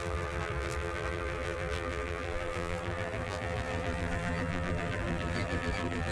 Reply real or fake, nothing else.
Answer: fake